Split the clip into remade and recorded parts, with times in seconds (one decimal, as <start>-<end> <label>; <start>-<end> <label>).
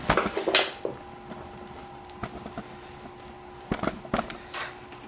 0.0-5.1 recorded